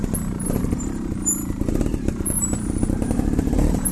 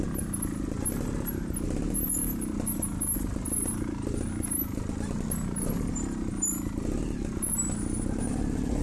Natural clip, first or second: second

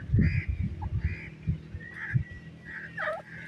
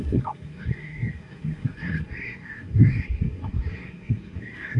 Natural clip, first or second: first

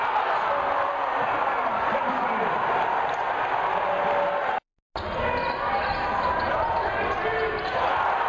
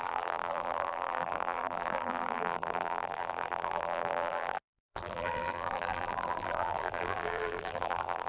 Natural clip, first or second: first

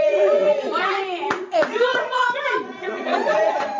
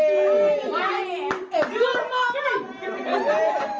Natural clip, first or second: second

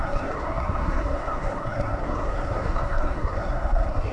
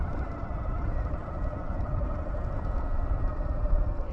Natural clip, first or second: second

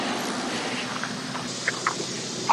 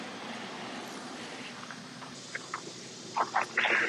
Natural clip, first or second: first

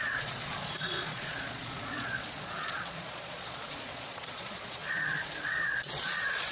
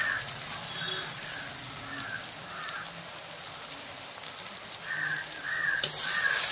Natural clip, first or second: second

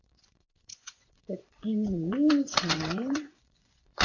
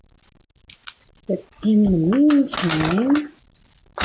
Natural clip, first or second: second